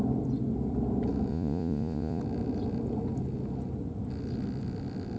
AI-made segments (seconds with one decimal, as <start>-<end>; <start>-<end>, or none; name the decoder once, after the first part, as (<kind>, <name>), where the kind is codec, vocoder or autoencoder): 1.3-2.2 (vocoder, Vocos)